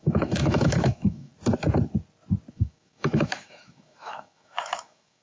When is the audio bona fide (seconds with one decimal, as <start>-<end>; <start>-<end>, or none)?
1.3-2.5